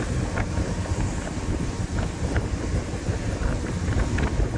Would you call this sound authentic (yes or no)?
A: yes